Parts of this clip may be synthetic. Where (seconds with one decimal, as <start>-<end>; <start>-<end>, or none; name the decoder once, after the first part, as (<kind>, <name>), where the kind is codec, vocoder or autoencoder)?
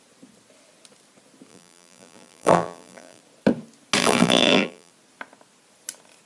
1.5-3.2 (vocoder, BigVGAN v2); 4.0-4.9